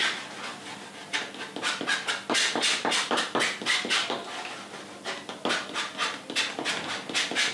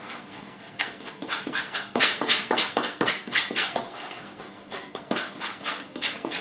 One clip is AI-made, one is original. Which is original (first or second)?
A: first